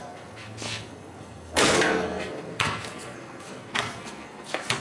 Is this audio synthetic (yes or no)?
yes